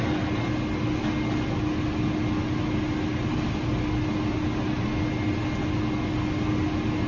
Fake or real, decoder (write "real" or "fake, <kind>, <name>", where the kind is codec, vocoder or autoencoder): real